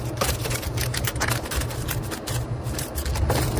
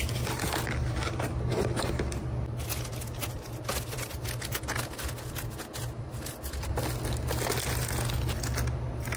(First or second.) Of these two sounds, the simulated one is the first